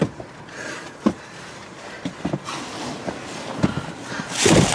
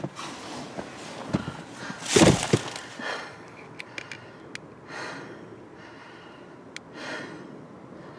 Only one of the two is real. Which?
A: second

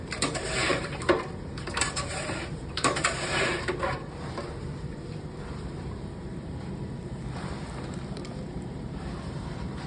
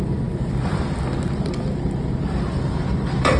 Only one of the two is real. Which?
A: second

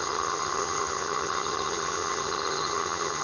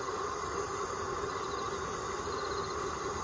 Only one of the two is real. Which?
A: second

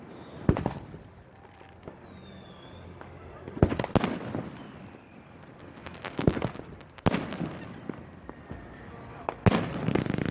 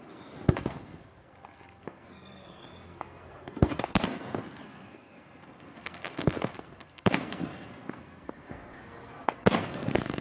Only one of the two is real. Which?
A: first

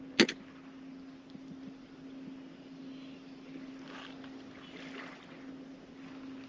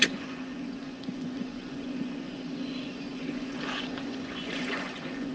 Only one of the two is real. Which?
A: first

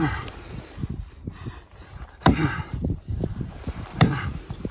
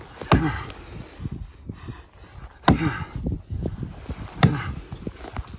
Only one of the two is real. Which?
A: second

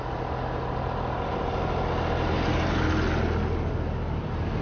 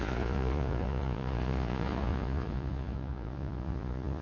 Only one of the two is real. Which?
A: first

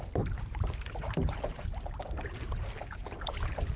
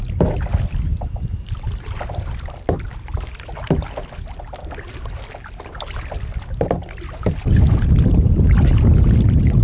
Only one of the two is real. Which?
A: second